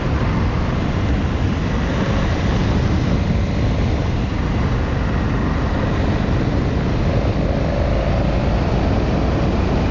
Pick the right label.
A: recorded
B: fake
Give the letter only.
A